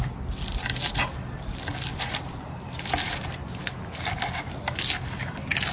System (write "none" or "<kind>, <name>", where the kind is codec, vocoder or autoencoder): none